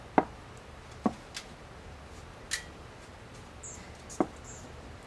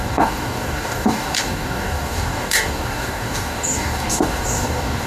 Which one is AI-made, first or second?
second